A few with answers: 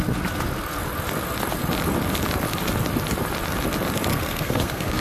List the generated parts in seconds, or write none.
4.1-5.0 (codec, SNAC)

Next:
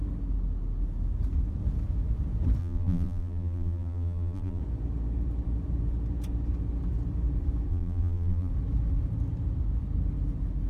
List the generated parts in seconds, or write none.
2.6-4.6 (vocoder, BigVGAN v2); 7.7-8.5

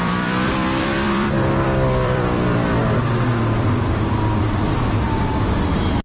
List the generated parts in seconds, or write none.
0.0-2.8 (vocoder, BigVGAN v2); 3.6-6.0

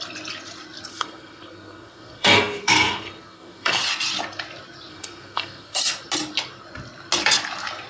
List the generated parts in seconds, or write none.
0.9-3.8 (codec, SNAC); 4.9-5.8

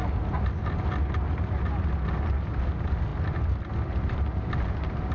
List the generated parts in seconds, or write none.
none